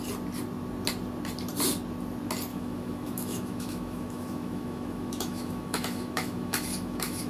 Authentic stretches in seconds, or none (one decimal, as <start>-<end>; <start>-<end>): 0.0-2.5